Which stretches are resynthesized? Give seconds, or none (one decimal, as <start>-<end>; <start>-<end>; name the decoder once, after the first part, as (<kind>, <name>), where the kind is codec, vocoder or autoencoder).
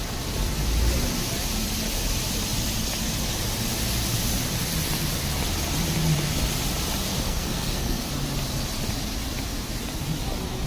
7.1-8.1 (codec, SNAC)